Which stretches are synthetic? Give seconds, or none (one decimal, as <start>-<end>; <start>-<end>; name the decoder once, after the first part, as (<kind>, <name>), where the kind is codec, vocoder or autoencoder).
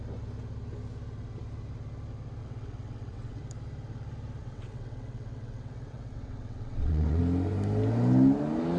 2.4-3.4 (vocoder, WaveNeXt); 4.4-7.2